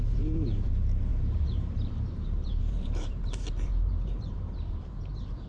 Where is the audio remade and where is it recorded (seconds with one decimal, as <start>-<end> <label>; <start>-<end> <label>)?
0.0-5.5 remade